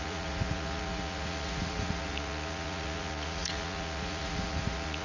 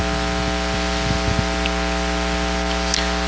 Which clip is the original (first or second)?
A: second